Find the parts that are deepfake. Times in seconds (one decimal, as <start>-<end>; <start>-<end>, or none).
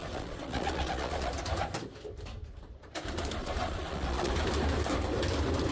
0.0-1.3; 3.4-4.3